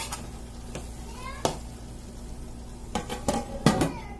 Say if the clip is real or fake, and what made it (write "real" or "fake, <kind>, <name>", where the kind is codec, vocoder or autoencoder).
real